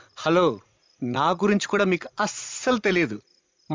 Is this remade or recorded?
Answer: remade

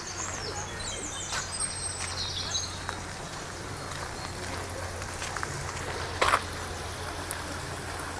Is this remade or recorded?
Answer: recorded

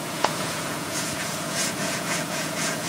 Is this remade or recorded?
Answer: remade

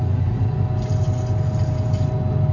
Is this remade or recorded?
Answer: recorded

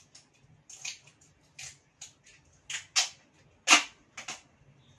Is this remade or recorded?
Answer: recorded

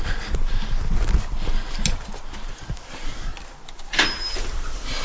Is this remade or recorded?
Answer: recorded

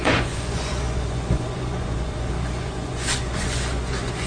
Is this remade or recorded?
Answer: remade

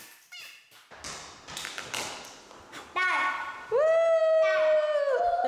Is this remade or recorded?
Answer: recorded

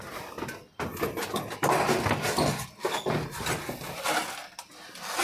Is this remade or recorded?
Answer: recorded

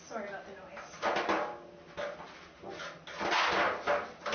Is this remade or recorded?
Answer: recorded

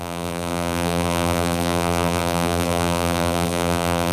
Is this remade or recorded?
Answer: remade